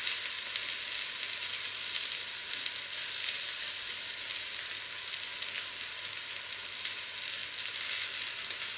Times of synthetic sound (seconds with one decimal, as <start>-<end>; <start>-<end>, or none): 1.5-5.3; 5.8-7.4; 8.3-8.8